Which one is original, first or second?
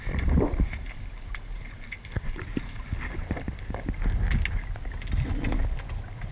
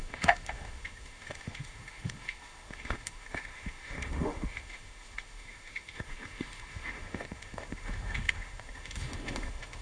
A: first